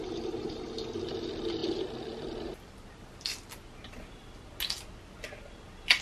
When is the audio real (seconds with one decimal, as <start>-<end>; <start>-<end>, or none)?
0.0-6.0